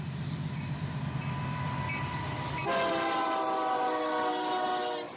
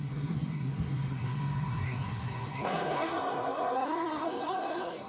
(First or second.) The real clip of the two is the first